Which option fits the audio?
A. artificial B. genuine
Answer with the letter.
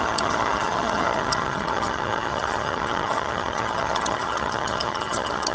A